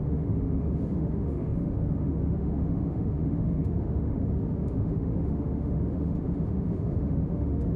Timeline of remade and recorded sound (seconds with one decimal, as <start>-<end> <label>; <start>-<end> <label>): 0.0-7.8 remade